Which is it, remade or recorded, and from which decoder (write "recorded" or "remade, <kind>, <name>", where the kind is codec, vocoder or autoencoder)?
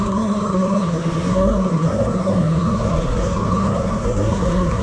remade, codec, SNAC